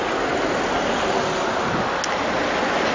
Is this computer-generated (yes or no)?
no